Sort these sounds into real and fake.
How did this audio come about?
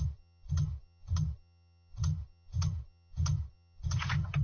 fake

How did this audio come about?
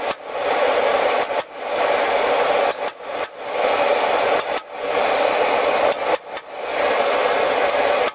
real